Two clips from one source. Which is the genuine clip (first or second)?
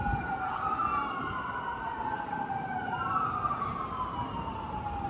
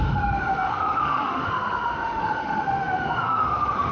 first